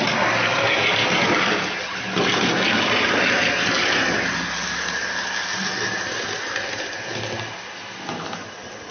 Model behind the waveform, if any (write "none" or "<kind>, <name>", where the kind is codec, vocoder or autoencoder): none